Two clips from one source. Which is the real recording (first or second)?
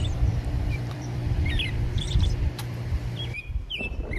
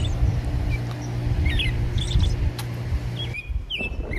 second